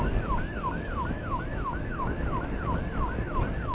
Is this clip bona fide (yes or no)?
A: no